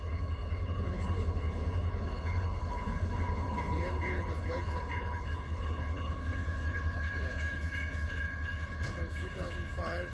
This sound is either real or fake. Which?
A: fake